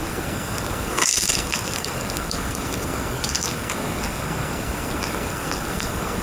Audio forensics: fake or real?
fake